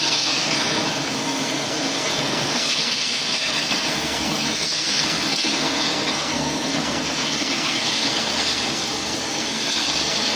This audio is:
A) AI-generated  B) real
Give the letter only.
A